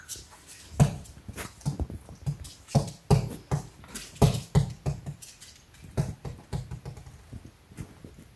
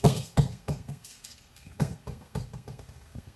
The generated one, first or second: second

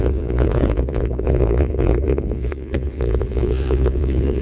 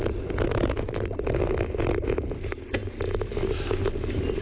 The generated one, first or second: first